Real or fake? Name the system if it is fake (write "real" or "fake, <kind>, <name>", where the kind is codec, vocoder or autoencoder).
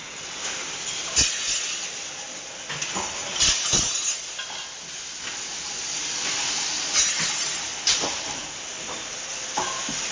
real